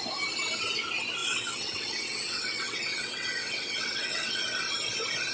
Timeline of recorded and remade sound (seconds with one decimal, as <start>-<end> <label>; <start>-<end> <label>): 0.0-1.2 recorded; 1.2-4.4 remade; 4.4-5.3 recorded